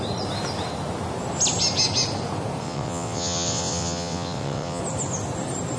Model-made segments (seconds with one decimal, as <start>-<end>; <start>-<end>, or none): 2.6-4.8